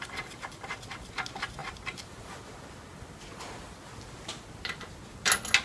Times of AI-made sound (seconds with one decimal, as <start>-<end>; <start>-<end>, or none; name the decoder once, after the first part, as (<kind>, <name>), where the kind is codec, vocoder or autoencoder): none